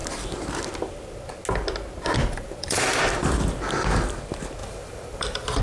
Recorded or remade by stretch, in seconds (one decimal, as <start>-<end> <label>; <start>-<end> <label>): 0.0-2.2 recorded; 2.2-3.0 remade; 3.0-4.6 recorded; 4.6-5.6 remade